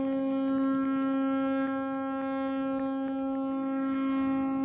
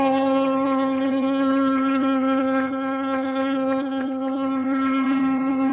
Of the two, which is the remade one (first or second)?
second